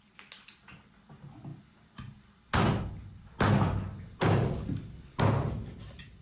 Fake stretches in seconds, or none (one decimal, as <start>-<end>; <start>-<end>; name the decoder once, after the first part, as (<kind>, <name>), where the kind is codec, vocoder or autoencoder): none

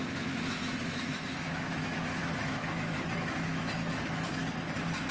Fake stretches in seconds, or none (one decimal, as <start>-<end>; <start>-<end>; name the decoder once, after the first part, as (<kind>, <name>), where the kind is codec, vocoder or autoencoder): 0.0-4.4 (autoencoder, DAC-VAE)